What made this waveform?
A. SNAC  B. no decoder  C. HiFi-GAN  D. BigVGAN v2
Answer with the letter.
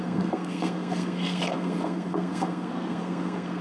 A